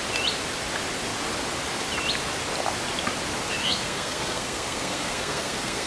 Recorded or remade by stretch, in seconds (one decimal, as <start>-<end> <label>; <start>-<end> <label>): 0.0-3.6 recorded; 3.6-5.9 remade